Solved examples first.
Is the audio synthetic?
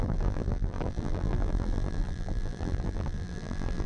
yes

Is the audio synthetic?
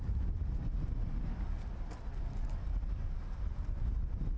no